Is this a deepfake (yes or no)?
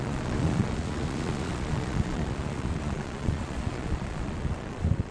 yes